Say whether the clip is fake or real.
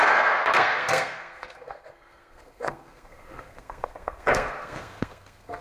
fake